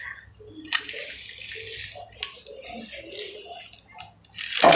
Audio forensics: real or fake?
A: real